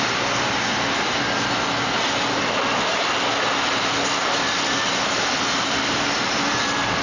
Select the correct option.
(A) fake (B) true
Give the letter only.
B